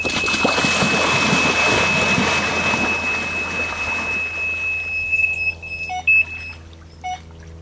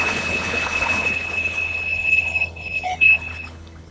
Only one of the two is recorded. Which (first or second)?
first